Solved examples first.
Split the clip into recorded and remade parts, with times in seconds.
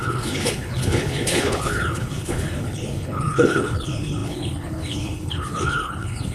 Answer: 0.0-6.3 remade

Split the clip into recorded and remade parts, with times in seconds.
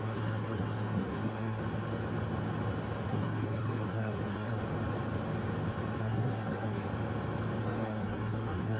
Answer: 0.0-1.6 remade; 1.6-3.1 recorded; 3.1-4.6 remade; 4.6-6.0 recorded; 6.0-6.9 remade; 6.9-7.6 recorded; 7.6-8.8 remade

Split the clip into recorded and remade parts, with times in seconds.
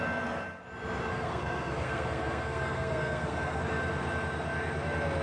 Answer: 0.0-1.1 recorded; 1.1-3.6 remade; 3.6-5.2 recorded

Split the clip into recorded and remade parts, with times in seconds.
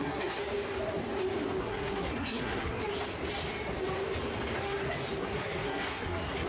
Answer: 0.0-0.4 remade; 0.4-1.6 recorded; 1.6-2.8 remade; 2.8-5.2 recorded; 5.2-6.5 remade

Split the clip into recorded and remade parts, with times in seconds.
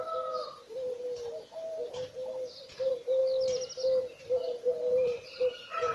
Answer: 0.0-3.2 remade; 3.2-4.2 recorded; 4.2-5.9 remade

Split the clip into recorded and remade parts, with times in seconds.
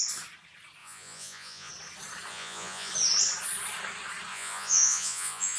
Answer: 0.0-0.8 recorded; 0.8-1.7 remade; 1.7-2.3 recorded; 2.3-2.9 remade; 2.9-4.3 recorded; 4.3-5.6 remade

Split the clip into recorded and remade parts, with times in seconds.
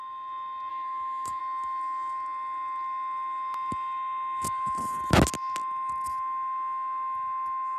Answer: 0.0-0.7 recorded; 0.7-1.4 remade; 1.4-7.8 recorded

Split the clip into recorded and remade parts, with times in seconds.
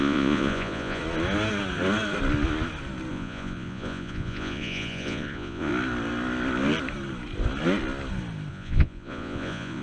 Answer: 0.0-1.0 remade; 1.0-3.1 recorded; 3.1-5.7 remade; 5.7-8.5 recorded; 8.5-9.8 remade